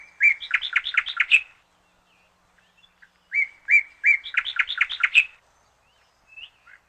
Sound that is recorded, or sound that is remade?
recorded